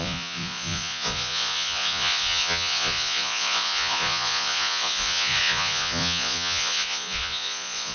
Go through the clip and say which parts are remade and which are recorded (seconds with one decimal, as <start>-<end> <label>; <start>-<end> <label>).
0.0-7.9 remade

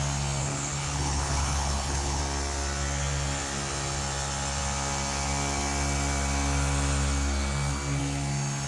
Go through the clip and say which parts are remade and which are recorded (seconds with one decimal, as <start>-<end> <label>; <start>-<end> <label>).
0.0-0.4 recorded; 0.4-2.2 remade; 2.2-8.7 recorded